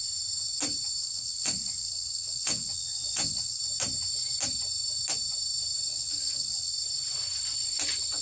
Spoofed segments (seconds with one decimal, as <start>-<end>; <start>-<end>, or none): 1.0-3.6; 5.9-6.7